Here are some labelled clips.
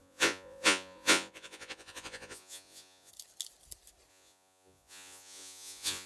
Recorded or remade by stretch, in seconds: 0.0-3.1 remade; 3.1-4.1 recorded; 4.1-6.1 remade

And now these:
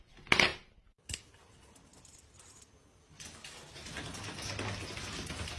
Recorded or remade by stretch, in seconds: 0.0-5.6 recorded

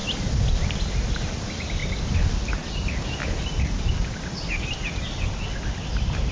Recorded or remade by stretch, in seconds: 0.0-6.3 recorded

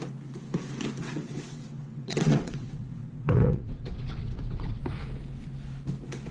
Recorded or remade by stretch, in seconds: 0.0-1.0 recorded; 1.0-4.8 remade; 4.8-6.3 recorded

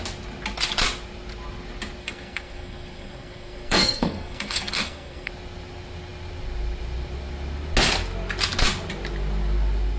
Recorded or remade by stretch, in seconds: 0.0-2.0 recorded; 2.0-5.3 remade; 5.3-10.0 recorded

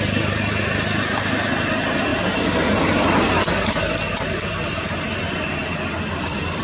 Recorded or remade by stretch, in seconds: 0.0-5.6 recorded; 5.6-6.6 remade

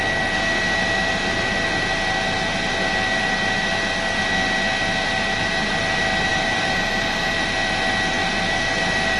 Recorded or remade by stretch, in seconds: 0.0-6.3 recorded; 6.3-7.0 remade; 7.0-8.2 recorded; 8.2-8.7 remade; 8.7-9.2 recorded